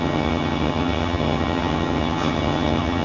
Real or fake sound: fake